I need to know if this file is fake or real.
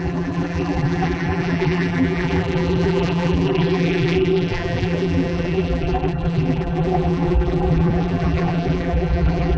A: fake